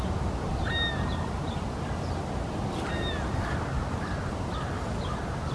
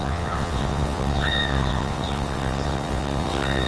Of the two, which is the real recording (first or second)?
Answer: first